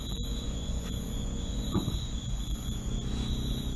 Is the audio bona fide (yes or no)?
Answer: no